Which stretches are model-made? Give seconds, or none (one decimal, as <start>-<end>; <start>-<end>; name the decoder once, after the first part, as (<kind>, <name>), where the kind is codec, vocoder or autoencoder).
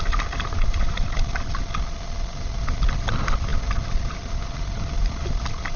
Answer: none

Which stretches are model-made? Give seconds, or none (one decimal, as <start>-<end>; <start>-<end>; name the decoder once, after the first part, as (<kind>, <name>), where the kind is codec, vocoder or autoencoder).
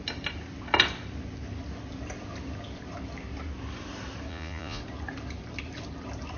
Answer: 4.3-4.8 (vocoder, Vocos)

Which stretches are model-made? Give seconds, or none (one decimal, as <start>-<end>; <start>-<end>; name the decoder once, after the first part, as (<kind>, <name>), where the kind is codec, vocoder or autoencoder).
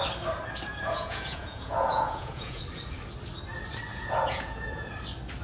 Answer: 0.7-2.6 (vocoder, Vocos); 3.9-4.9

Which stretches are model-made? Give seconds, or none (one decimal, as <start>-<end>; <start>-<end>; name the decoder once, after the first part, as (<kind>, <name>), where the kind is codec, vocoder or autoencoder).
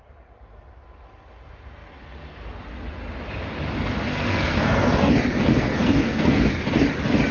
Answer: 4.1-5.1 (codec, SNAC); 5.5-6.5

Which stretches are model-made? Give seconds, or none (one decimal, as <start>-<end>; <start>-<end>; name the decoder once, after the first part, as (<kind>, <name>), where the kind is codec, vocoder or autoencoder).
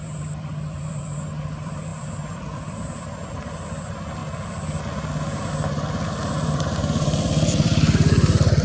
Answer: 0.0-4.2 (vocoder, BigVGAN v2); 5.5-8.6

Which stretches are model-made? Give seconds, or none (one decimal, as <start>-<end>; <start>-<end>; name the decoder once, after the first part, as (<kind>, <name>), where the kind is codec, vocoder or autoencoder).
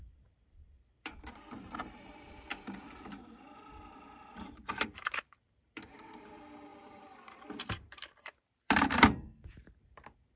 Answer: 0.0-10.4 (vocoder, BigVGAN v2)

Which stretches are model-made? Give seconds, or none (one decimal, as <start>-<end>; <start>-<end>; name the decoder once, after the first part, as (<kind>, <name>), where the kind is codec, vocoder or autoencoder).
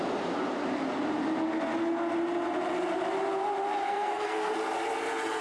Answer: 3.8-4.5 (codec, SNAC)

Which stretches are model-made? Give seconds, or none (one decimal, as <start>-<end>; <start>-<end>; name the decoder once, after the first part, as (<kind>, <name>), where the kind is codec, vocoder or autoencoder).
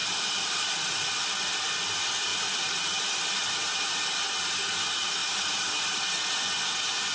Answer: none